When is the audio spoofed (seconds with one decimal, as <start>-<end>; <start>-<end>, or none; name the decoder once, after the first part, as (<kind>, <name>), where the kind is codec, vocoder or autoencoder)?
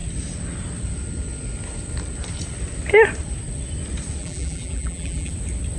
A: 4.2-5.3 (vocoder, BigVGAN v2)